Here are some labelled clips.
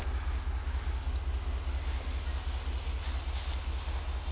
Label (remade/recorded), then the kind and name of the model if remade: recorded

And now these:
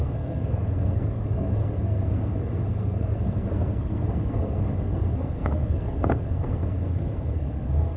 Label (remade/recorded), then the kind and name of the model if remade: remade, codec, SNAC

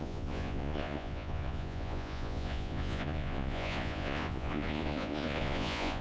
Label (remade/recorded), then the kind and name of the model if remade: remade, vocoder, Vocos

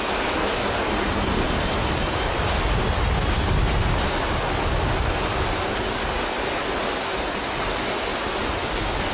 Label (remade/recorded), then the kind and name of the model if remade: recorded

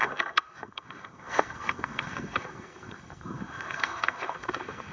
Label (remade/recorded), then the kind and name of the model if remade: remade, codec, SNAC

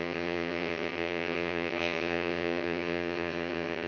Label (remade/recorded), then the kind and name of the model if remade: remade, vocoder, HiFi-GAN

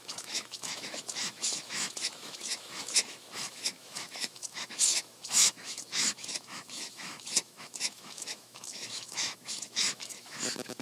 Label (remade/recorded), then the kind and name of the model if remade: remade, autoencoder, DAC-VAE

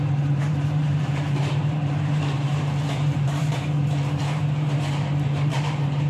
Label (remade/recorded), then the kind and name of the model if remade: remade, vocoder, BigVGAN v2